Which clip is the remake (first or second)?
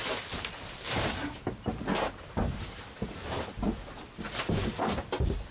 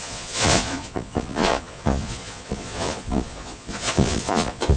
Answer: second